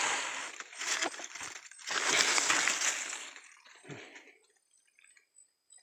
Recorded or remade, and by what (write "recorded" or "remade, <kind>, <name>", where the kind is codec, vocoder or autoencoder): recorded